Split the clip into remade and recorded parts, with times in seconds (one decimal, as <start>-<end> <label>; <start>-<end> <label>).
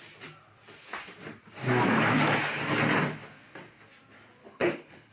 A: 0.0-4.4 recorded; 4.4-5.1 remade